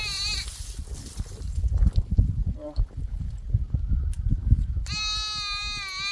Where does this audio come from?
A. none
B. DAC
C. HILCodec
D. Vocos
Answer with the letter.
A